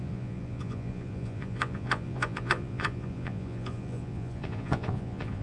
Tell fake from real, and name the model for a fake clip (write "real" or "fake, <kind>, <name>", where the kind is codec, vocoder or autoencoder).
fake, vocoder, Vocos